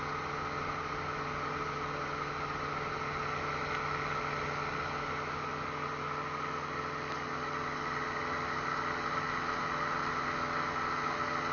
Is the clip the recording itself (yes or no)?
yes